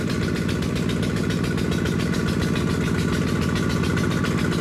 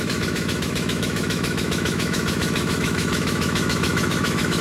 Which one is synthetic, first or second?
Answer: second